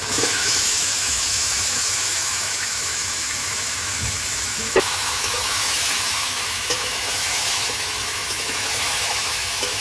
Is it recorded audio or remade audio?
remade